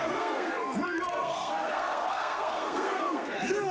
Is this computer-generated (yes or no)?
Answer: yes